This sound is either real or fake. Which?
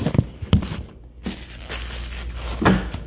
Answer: real